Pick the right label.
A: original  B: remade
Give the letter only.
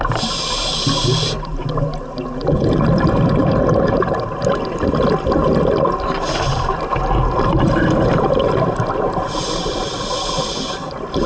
A